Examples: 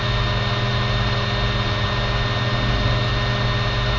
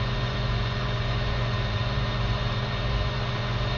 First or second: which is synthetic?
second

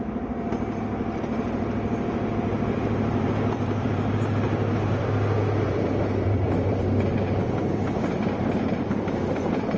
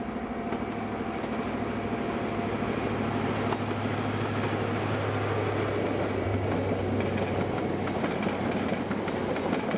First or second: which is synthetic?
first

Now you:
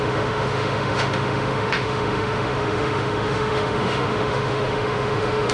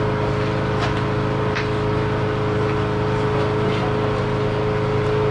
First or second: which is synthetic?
first